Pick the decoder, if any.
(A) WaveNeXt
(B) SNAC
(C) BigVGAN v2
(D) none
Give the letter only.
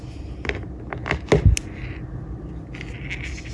D